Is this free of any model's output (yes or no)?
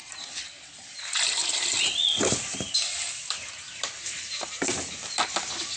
yes